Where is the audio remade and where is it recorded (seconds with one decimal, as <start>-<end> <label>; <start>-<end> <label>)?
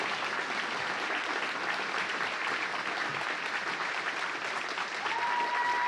0.0-5.9 recorded